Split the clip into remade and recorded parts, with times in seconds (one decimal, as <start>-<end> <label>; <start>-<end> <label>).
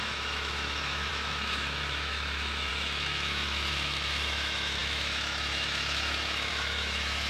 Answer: 0.0-7.3 remade